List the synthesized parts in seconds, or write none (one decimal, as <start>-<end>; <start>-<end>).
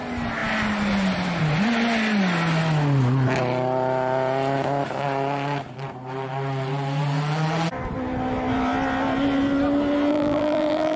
10.1-11.0